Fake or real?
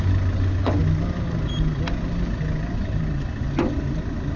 real